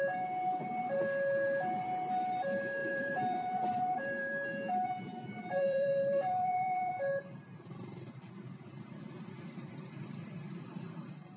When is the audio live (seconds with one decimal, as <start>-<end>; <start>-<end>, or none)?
0.0-2.8; 6.9-11.4